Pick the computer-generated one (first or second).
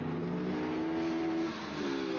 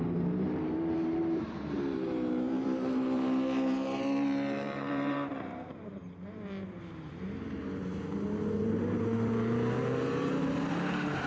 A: second